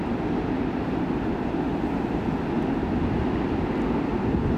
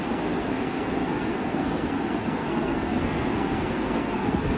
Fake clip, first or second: second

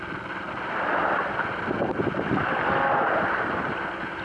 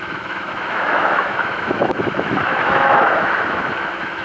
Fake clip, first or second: second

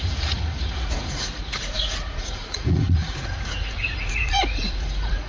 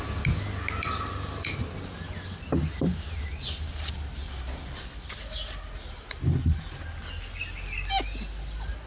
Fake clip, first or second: first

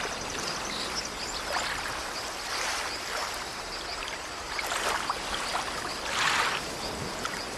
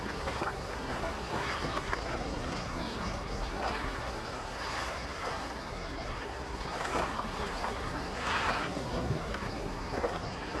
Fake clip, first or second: second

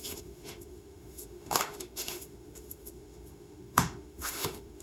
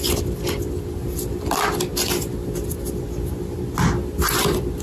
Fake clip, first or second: first